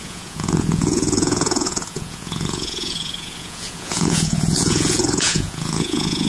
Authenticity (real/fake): fake